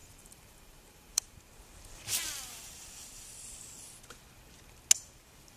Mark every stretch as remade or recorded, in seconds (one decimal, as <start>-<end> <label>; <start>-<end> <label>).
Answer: 0.0-1.5 remade; 1.5-5.6 recorded